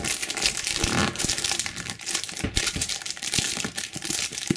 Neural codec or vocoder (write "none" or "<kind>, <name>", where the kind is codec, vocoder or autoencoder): vocoder, BigVGAN v2